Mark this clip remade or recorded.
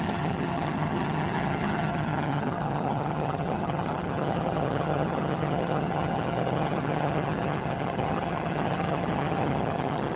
remade